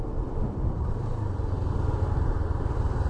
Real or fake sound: real